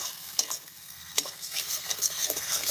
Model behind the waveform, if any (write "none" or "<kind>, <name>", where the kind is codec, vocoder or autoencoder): codec, SNAC